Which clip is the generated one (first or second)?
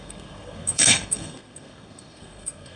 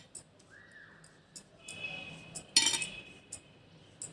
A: first